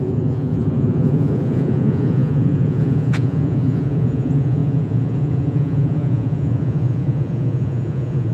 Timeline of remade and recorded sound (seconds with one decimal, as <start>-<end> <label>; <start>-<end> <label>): 0.0-8.3 remade